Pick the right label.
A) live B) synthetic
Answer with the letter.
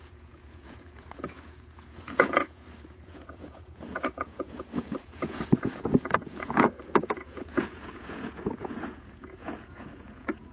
B